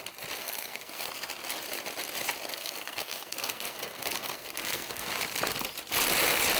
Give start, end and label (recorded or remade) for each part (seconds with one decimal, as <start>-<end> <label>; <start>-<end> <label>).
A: 0.0-0.4 recorded; 0.4-1.1 remade; 1.1-2.5 recorded; 2.5-5.1 remade; 5.1-6.6 recorded